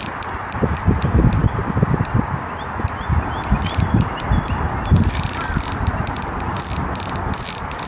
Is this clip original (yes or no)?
yes